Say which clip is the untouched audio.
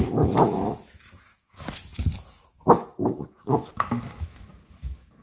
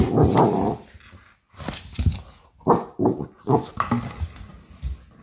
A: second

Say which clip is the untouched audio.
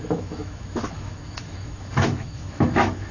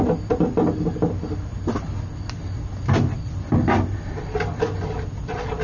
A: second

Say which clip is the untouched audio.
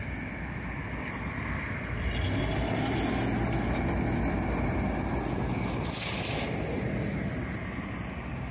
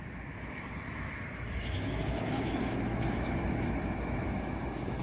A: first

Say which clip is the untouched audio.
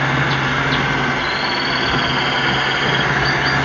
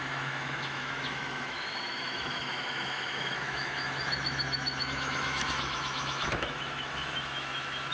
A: first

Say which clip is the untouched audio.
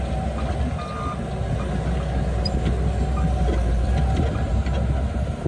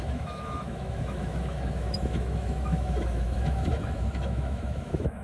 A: first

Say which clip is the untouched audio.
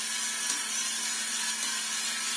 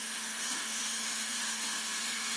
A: first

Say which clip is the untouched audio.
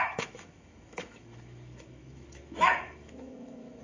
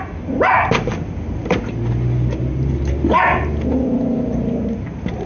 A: second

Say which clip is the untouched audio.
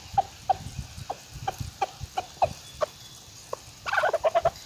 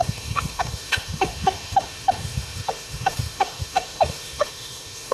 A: first